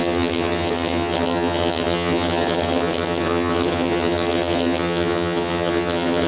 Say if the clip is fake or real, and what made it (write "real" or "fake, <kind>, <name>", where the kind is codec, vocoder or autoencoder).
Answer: fake, vocoder, HiFi-GAN